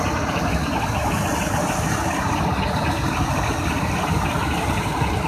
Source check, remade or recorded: recorded